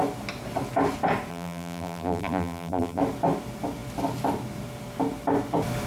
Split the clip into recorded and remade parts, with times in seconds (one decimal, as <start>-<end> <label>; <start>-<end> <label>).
0.0-1.3 recorded; 1.3-3.0 remade; 3.0-5.9 recorded